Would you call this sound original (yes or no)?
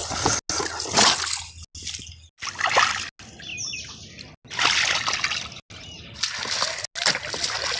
yes